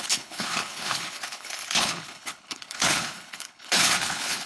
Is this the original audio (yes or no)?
no